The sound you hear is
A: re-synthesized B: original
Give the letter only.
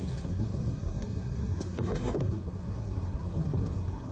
A